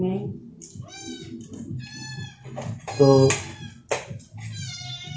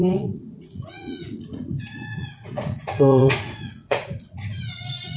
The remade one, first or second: second